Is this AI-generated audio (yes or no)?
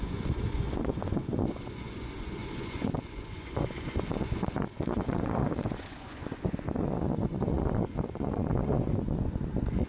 yes